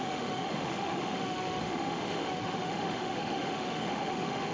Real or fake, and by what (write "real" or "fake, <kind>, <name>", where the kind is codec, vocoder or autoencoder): fake, autoencoder, DAC-VAE